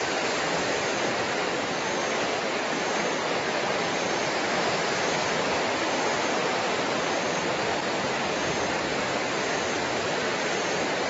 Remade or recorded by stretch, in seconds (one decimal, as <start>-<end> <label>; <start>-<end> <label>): 0.0-11.1 remade